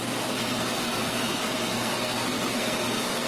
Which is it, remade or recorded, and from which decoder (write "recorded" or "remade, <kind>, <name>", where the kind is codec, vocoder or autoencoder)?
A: remade, codec, SNAC